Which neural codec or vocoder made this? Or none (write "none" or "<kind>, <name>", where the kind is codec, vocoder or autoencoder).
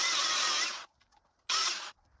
none